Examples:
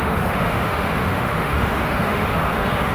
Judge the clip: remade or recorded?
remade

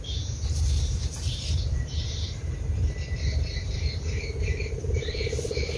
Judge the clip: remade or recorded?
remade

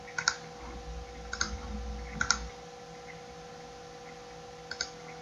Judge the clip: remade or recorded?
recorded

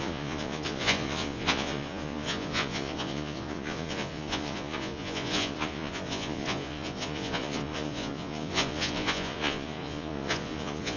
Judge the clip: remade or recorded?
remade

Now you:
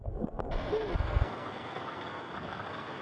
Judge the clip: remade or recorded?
remade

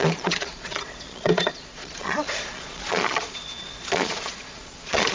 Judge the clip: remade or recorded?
remade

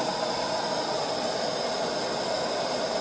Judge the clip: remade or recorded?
recorded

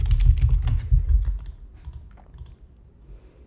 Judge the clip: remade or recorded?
recorded